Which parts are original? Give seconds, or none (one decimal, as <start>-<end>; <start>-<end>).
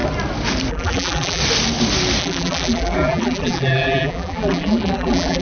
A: 0.0-0.7; 1.4-2.2